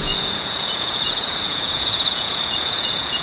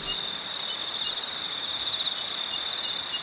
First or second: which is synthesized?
first